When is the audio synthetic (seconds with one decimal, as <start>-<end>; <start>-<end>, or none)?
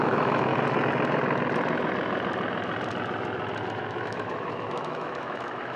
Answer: 0.0-0.5; 4.0-5.8